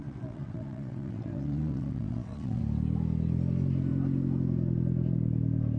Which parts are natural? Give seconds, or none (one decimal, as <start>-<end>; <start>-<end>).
2.6-5.8